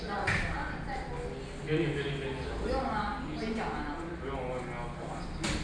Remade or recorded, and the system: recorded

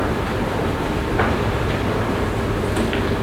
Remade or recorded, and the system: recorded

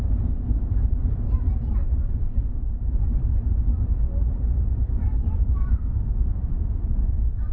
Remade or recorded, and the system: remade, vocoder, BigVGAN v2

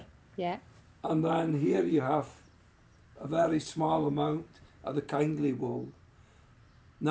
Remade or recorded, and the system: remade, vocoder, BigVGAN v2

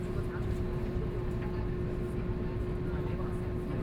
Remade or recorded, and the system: recorded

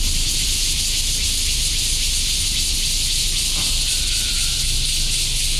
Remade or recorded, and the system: recorded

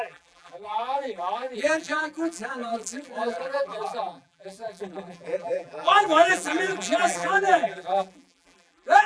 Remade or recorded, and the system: remade, vocoder, BigVGAN v2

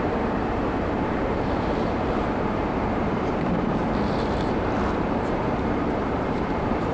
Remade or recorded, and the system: remade, vocoder, BigVGAN v2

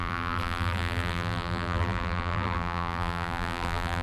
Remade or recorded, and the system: remade, vocoder, BigVGAN v2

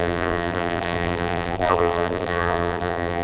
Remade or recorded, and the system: remade, vocoder, BigVGAN v2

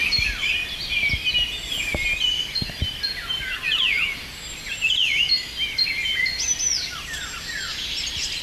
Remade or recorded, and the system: recorded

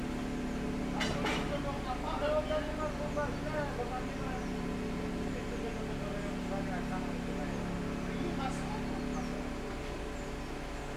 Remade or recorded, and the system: recorded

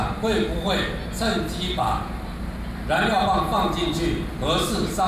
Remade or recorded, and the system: recorded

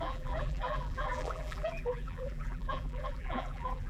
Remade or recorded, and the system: remade, vocoder, BigVGAN v2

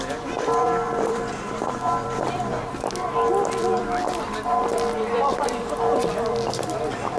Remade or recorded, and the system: remade, vocoder, BigVGAN v2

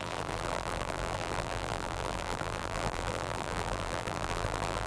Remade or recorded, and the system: remade, vocoder, BigVGAN v2